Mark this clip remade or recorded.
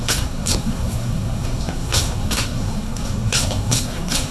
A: remade